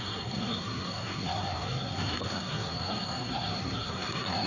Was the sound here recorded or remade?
remade